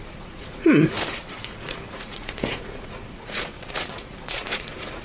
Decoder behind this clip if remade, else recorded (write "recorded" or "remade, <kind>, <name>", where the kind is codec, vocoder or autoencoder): remade, vocoder, Vocos